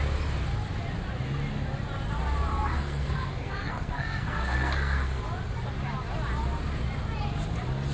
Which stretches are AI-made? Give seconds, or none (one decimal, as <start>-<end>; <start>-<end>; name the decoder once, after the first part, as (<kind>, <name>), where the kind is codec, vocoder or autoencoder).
2.5-5.2 (codec, SNAC)